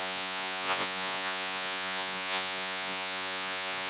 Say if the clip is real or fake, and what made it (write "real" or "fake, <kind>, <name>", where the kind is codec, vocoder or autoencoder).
fake, vocoder, Vocos